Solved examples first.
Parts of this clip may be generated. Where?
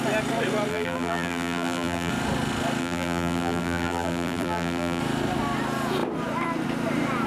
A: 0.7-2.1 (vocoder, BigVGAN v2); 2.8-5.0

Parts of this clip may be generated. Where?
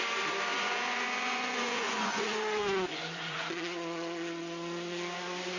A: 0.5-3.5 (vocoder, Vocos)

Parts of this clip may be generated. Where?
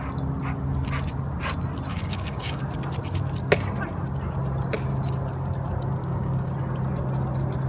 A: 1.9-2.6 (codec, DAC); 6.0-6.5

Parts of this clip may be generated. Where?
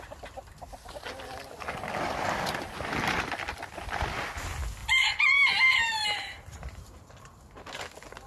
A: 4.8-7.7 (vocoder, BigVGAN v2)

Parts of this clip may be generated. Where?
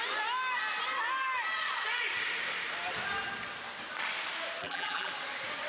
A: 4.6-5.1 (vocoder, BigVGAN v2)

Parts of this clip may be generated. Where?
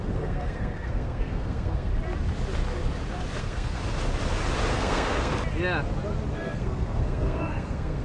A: 0.0-1.9 (codec, SNAC); 3.4-3.8; 4.7-5.3; 6.3-8.0